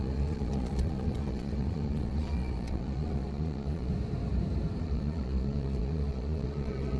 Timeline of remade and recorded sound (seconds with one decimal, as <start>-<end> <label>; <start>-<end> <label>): 0.0-3.9 remade; 3.9-4.8 recorded; 4.8-7.0 remade